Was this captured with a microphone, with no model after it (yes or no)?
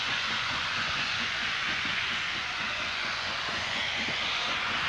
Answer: no